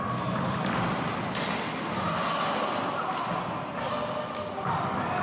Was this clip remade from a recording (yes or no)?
no